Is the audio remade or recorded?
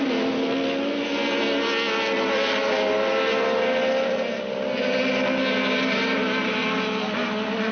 recorded